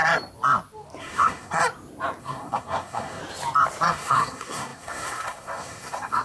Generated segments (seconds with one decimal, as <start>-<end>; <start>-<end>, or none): 1.0-1.6; 2.2-3.2; 3.9-6.2